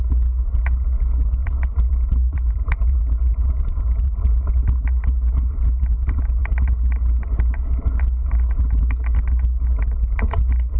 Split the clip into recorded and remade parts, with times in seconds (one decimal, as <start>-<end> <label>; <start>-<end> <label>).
0.0-1.4 recorded; 1.4-4.6 remade; 4.6-10.8 recorded